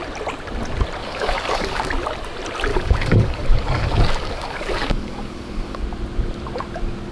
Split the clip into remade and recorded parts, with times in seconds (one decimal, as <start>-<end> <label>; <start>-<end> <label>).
0.0-1.0 recorded; 1.0-1.9 remade; 1.9-2.7 recorded; 2.7-5.8 remade; 5.8-7.1 recorded